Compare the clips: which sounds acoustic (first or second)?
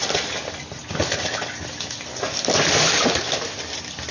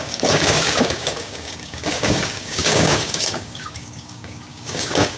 first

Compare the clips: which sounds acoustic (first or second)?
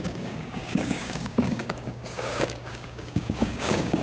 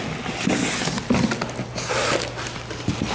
second